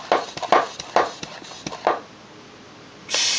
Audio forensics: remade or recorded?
recorded